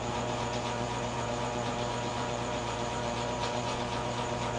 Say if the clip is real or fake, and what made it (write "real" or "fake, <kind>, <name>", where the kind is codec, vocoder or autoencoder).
fake, vocoder, Vocos